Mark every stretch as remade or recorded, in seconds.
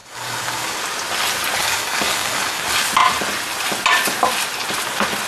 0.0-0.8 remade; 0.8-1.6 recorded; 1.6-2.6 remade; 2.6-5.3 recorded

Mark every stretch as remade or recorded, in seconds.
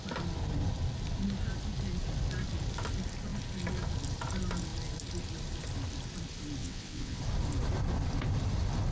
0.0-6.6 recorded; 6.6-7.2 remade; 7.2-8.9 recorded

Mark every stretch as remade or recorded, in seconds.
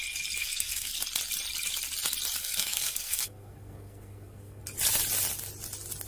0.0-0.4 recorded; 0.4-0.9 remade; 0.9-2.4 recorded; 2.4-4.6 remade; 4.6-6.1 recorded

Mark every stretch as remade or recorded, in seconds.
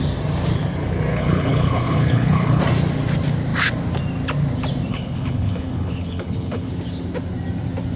0.0-1.1 recorded; 1.1-2.6 remade; 2.6-4.9 recorded; 4.9-6.7 remade; 6.7-8.0 recorded